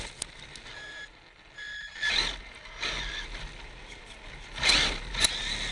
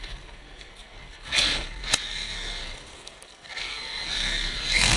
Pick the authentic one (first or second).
first